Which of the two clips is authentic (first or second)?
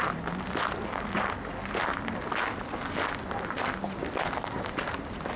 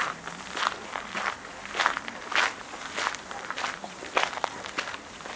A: first